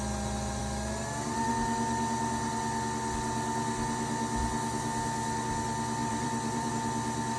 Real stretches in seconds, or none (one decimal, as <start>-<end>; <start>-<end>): 0.0-0.6; 1.5-6.0; 6.7-7.4